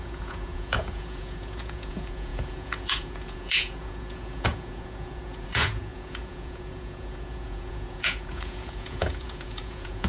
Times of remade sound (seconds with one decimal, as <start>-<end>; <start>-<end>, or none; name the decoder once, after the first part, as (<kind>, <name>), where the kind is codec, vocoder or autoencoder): 0.0-10.1 (vocoder, Vocos)